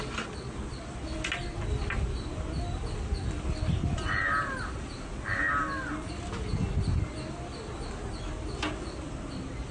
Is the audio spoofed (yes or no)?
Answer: no